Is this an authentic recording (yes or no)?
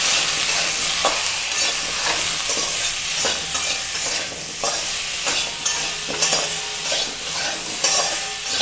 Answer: yes